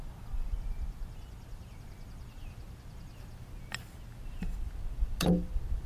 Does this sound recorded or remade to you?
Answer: recorded